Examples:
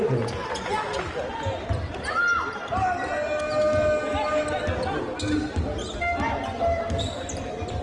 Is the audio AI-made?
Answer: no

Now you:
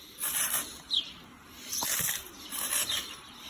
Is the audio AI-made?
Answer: yes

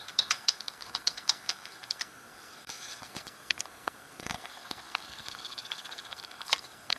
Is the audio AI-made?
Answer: yes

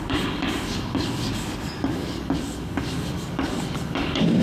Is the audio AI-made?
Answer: yes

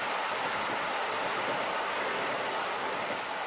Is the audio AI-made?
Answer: no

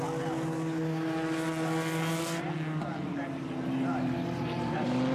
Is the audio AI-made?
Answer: no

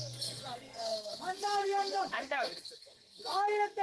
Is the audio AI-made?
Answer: yes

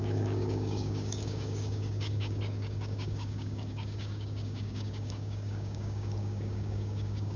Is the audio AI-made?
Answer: yes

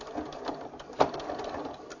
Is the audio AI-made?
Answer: no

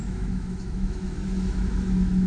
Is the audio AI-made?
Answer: yes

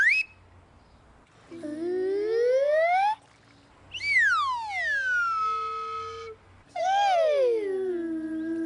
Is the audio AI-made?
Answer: no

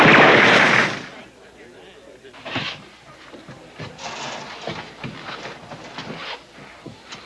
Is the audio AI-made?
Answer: no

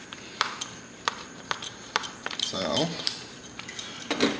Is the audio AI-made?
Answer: yes